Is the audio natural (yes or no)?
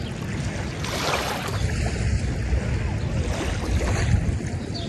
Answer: yes